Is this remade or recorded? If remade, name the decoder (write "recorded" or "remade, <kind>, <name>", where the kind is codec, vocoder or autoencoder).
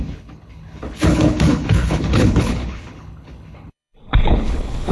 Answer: remade, codec, HILCodec